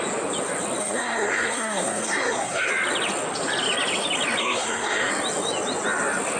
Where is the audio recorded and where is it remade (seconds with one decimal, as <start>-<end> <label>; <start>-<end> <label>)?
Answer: 0.0-0.8 recorded; 0.8-2.7 remade; 2.7-4.4 recorded; 4.4-5.1 remade; 5.1-6.4 recorded